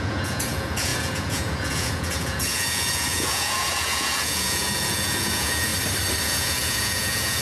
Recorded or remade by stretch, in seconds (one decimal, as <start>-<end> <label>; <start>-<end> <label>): 0.0-5.7 remade; 5.7-6.2 recorded; 6.2-7.4 remade